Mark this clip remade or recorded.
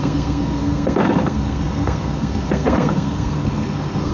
remade